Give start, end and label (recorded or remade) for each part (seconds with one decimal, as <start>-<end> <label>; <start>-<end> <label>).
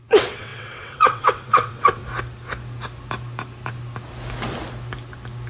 0.0-2.0 remade; 2.0-5.5 recorded